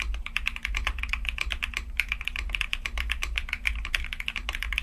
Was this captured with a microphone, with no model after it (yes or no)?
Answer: no